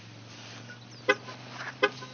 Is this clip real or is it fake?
real